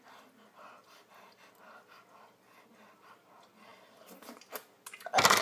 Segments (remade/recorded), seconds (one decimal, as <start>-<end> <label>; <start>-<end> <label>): 0.0-5.4 recorded